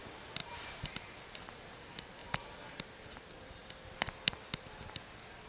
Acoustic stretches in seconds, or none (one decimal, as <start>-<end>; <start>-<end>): 0.0-0.4; 1.0-2.2; 2.8-5.5

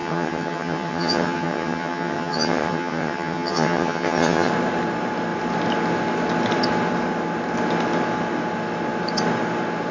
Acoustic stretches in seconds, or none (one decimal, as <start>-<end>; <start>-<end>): 4.5-9.9